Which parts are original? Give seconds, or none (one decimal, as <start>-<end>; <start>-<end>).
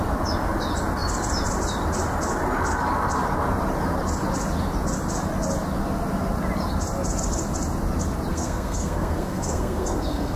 0.0-8.3